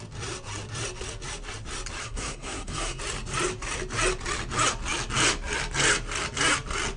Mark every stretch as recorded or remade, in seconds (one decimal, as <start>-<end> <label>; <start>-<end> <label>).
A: 0.0-2.0 recorded; 2.0-3.0 remade; 3.0-7.0 recorded